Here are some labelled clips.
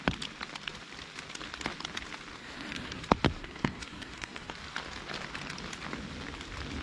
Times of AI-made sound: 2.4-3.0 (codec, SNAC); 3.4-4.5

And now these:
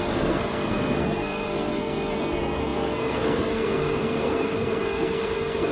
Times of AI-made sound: 0.0-5.7 (codec, SNAC)

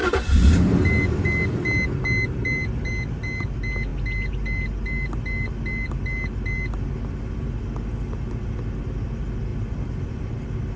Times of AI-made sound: none

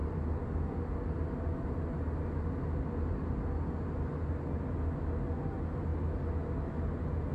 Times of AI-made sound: none

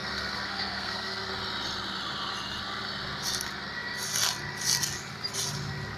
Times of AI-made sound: 0.0-1.3 (codec, SNAC)

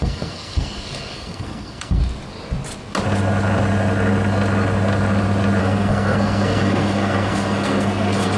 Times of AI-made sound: 0.0-2.0 (codec, SNAC); 5.6-8.4

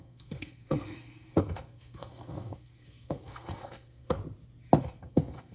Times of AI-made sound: 0.0-4.2 (codec, SNAC); 4.8-5.5